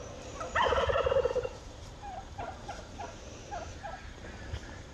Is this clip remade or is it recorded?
remade